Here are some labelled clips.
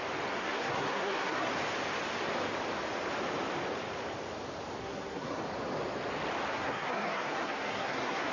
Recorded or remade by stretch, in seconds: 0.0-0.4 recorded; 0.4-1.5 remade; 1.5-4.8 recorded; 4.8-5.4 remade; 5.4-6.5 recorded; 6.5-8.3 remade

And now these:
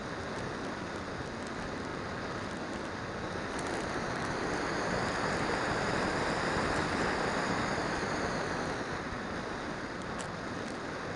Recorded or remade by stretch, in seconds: 0.0-11.2 recorded

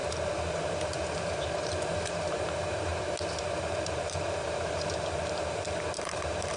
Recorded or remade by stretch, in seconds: 0.0-2.9 remade; 2.9-3.4 recorded; 3.4-6.6 remade